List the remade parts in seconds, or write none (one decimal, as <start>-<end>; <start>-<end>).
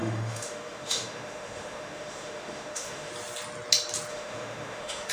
0.0-3.1; 4.1-5.1